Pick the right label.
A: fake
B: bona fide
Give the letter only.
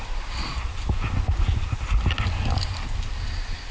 B